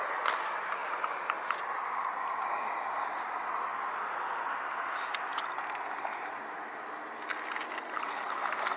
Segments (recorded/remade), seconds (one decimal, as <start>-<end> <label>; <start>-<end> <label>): 0.0-8.8 recorded